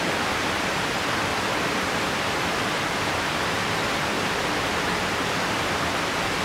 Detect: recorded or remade recorded